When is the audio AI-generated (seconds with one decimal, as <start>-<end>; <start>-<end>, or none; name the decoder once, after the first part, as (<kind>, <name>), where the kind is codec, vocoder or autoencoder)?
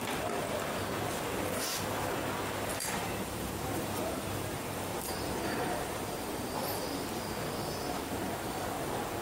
2.7-6.9 (vocoder, BigVGAN v2)